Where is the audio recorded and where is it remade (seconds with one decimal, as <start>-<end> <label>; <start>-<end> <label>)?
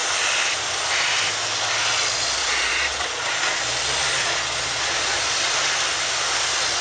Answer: 0.0-2.4 recorded; 2.4-3.3 remade; 3.3-4.1 recorded; 4.1-5.3 remade; 5.3-6.8 recorded